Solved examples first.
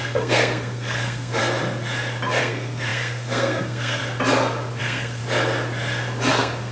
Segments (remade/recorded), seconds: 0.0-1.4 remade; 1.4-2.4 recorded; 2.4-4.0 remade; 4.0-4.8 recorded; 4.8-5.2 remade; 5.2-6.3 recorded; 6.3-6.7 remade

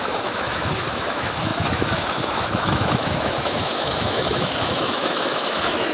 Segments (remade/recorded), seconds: 0.0-5.9 remade

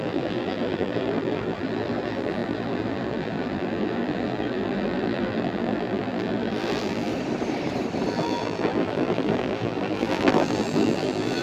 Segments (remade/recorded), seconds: 0.0-7.1 remade; 7.1-8.1 recorded; 8.1-11.4 remade

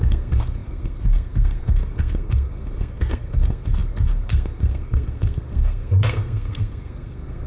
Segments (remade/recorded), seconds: 0.0-7.5 remade

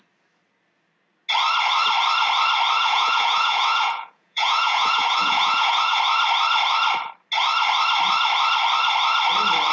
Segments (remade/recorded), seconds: 0.0-2.8 recorded; 2.8-6.0 remade; 6.0-9.7 recorded